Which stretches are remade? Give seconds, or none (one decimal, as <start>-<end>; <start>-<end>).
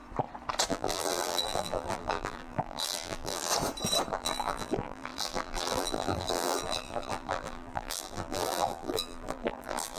0.7-3.5; 4.1-10.0